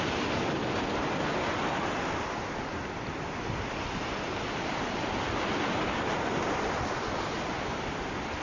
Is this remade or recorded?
recorded